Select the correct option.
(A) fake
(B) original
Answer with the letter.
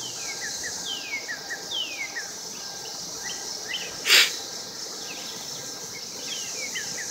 B